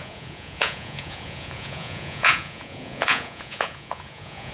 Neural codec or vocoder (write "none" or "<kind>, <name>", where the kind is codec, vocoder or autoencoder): vocoder, Vocos